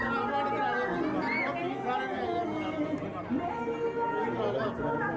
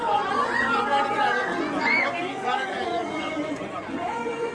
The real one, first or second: first